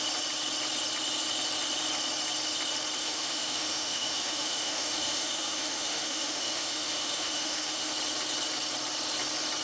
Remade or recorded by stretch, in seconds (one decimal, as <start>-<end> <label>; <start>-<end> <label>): 0.0-3.0 recorded; 3.0-7.9 remade; 7.9-9.6 recorded